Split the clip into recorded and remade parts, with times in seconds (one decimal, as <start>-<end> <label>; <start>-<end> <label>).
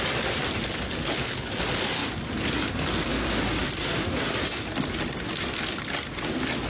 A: 0.0-1.0 recorded; 1.0-1.6 remade; 1.6-6.7 recorded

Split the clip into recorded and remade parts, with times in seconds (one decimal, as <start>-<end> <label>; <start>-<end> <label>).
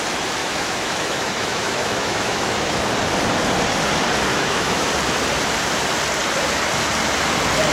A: 0.0-0.4 recorded; 0.4-2.8 remade; 2.8-4.3 recorded; 4.3-4.9 remade; 4.9-7.7 recorded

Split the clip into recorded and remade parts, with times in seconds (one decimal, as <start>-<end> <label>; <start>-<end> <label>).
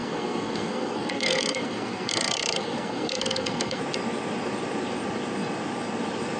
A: 0.0-3.8 remade; 3.8-6.4 recorded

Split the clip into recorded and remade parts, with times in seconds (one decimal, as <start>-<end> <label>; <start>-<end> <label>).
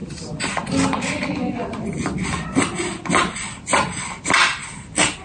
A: 0.0-5.2 recorded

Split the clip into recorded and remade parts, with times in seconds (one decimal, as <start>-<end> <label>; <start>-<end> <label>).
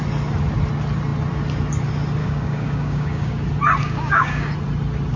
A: 0.0-2.2 recorded; 2.2-3.4 remade; 3.4-3.8 recorded; 3.8-4.5 remade; 4.5-5.2 recorded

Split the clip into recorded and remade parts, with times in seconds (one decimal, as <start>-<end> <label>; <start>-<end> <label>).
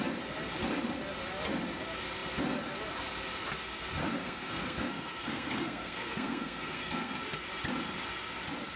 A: 0.0-4.0 recorded; 4.0-7.2 remade; 7.2-8.8 recorded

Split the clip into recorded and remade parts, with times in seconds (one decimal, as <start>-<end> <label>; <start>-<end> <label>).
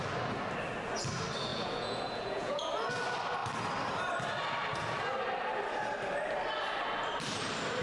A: 0.0-1.5 recorded; 1.5-2.7 remade; 2.7-7.8 recorded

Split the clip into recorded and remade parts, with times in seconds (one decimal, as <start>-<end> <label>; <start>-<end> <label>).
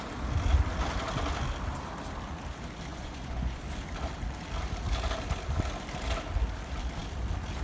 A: 0.0-2.9 recorded; 2.9-3.6 remade; 3.6-7.6 recorded